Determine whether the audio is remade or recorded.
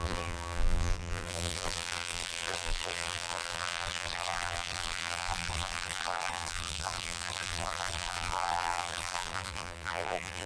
remade